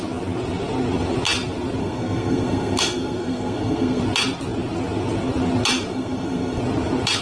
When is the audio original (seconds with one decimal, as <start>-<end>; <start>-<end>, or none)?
0.0-1.8; 4.0-5.9; 6.6-7.2